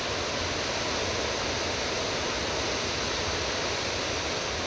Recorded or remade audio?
recorded